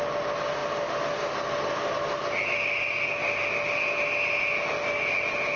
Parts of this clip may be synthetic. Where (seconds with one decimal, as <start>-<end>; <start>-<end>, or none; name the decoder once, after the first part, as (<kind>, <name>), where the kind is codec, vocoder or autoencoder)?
none